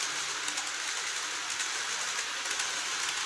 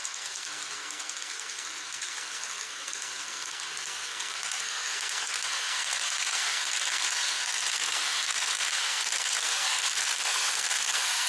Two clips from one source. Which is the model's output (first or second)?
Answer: second